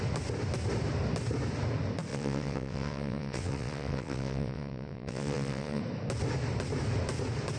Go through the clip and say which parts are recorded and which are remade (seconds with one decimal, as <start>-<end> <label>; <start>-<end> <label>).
0.0-2.1 recorded; 2.1-5.8 remade; 5.8-7.6 recorded